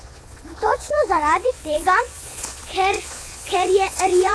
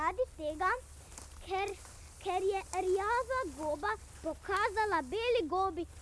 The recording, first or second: second